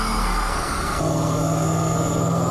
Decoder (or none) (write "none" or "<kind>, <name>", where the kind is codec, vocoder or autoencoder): codec, SNAC